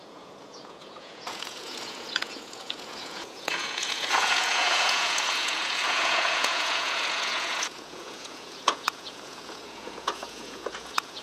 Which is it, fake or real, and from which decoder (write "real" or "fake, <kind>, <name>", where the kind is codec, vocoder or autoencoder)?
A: fake, vocoder, Vocos